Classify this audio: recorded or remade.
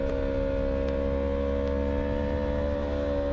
recorded